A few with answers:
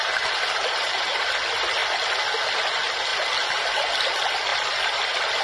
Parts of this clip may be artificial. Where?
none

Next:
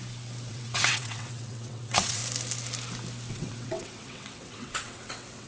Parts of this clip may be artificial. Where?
0.5-2.2; 3.3-5.5